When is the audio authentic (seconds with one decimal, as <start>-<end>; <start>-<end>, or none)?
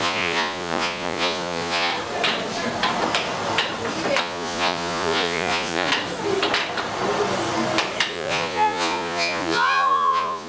1.9-4.2; 5.9-8.1